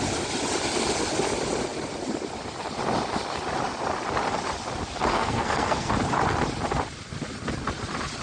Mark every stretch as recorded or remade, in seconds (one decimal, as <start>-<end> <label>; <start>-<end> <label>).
0.0-5.1 recorded; 5.1-5.9 remade; 5.9-8.2 recorded